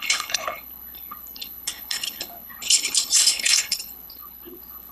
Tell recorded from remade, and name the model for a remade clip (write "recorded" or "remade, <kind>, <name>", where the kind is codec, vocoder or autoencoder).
remade, codec, HILCodec